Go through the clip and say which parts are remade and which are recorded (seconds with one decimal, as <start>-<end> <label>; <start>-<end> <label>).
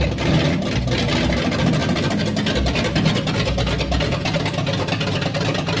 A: 0.0-5.8 recorded